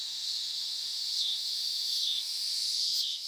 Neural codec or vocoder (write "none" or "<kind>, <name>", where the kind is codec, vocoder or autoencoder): autoencoder, DAC-VAE